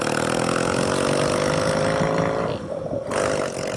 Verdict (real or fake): real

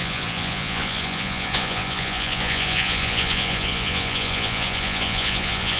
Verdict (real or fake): fake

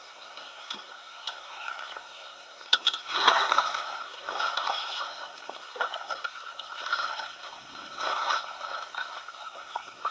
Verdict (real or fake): fake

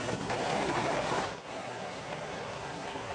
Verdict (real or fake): fake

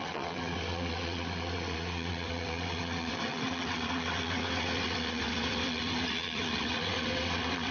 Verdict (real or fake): fake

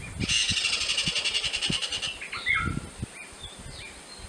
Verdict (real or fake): real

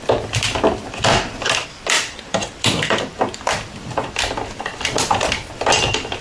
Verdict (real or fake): fake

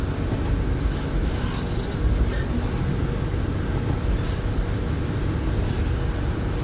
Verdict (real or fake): real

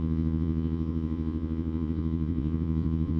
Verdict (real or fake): fake